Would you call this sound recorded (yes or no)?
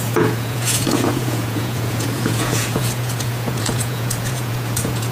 no